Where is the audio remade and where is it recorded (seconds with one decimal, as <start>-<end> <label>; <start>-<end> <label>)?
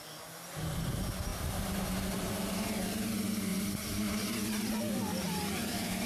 0.0-6.1 recorded